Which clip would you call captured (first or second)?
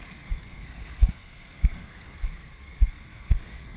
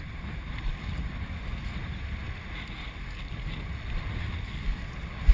second